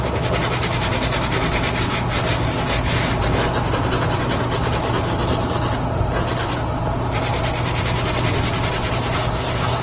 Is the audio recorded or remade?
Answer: recorded